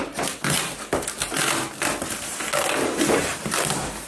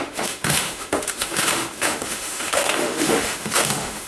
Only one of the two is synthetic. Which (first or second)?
second